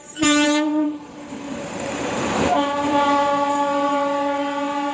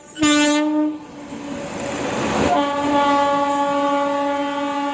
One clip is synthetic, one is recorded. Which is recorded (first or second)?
second